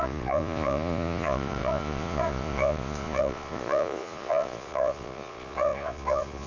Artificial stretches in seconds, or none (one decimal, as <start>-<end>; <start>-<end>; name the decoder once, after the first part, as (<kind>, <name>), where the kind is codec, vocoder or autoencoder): 0.0-6.5 (vocoder, Vocos)